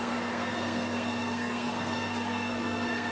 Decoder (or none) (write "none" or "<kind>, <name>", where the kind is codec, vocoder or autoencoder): codec, SNAC